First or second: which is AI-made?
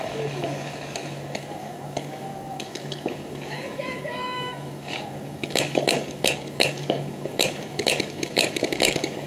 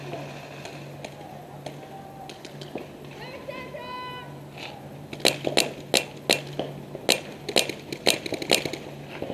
first